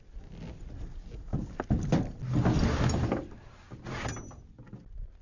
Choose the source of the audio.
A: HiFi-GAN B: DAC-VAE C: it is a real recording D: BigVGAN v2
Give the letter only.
C